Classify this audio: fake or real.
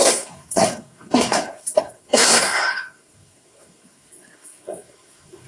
fake